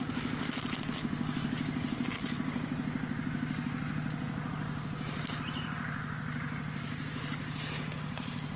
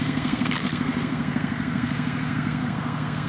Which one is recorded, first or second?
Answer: first